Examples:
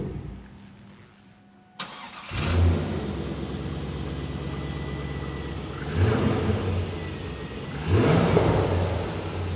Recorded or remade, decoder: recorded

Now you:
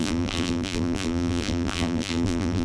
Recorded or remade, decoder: remade, vocoder, BigVGAN v2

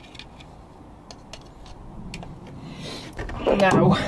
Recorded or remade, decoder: recorded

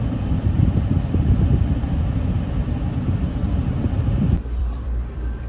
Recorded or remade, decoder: remade, vocoder, BigVGAN v2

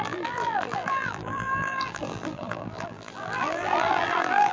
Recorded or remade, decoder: remade, vocoder, BigVGAN v2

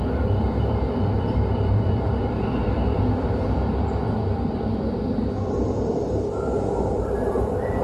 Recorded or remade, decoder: remade, vocoder, BigVGAN v2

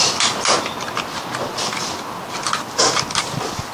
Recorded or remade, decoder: recorded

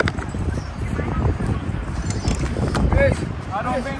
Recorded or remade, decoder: remade, vocoder, BigVGAN v2